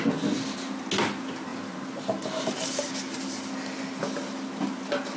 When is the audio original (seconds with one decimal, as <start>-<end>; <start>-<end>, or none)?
0.0-5.2